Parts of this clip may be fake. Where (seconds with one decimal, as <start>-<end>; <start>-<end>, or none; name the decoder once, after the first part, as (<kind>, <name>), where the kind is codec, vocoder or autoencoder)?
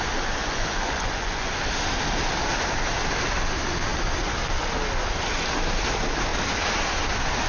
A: 0.4-1.5 (vocoder, Vocos)